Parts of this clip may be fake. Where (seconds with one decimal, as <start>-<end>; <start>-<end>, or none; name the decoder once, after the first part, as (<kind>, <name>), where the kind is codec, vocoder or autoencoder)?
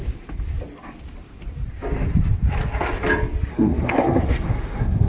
3.5-5.1 (codec, SNAC)